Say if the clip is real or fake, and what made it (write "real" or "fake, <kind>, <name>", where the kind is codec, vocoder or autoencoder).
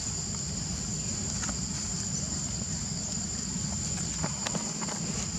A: real